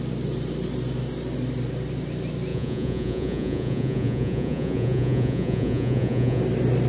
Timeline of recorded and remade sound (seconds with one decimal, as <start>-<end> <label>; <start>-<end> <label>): 0.0-2.5 recorded; 2.5-6.4 remade; 6.4-6.9 recorded